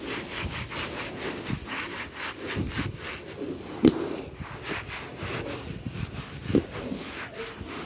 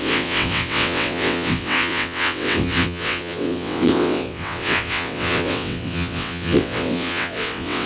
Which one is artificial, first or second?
second